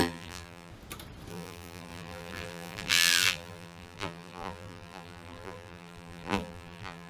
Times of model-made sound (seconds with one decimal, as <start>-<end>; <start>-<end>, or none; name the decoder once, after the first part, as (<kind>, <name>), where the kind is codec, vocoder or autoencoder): 0.0-0.7 (vocoder, BigVGAN v2); 1.3-7.1